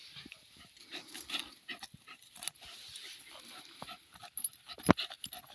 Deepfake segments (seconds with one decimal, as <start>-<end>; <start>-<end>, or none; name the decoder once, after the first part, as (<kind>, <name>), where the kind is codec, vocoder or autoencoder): 0.0-1.1 (vocoder, BigVGAN v2)